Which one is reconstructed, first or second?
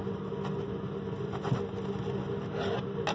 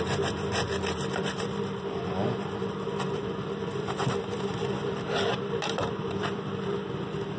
second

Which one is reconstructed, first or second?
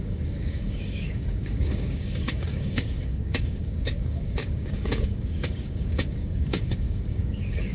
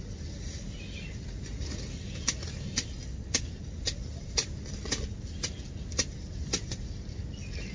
first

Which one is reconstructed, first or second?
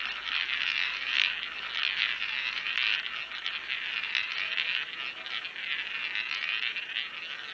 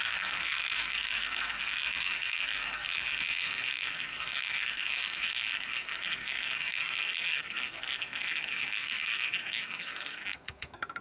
second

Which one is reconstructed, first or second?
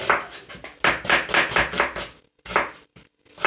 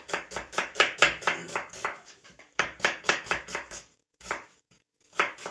second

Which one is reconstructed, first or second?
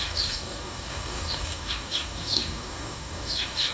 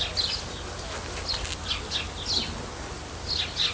first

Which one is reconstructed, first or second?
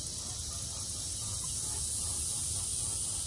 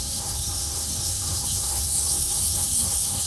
second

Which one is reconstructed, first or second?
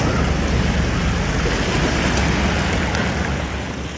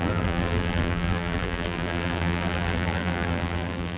second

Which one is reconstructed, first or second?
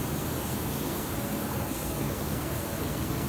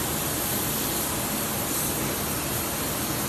first